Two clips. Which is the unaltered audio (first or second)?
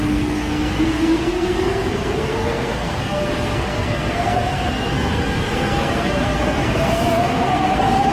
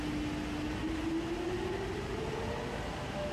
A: second